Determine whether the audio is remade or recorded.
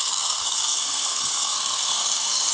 remade